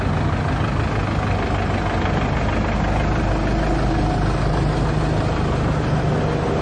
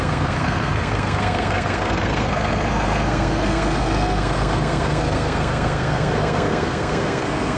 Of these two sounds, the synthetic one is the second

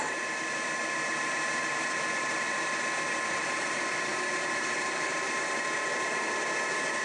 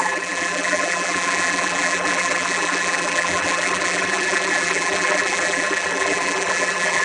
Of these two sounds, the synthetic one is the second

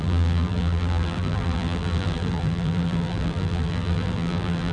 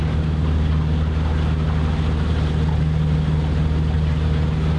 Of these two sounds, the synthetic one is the first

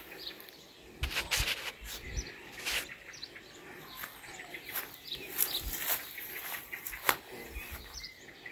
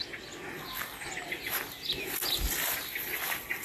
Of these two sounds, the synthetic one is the first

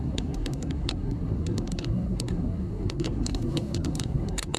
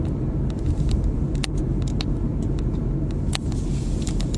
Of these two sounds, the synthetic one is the first